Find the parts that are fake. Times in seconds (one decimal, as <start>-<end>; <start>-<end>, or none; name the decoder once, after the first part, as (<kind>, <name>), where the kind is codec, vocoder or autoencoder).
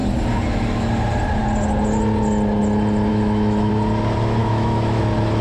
3.1-3.7 (autoencoder, DAC-VAE); 4.4-5.0